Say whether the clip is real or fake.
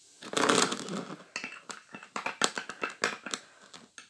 real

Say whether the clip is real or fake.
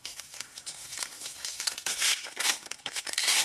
fake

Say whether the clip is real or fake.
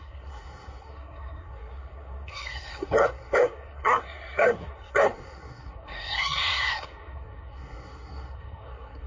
fake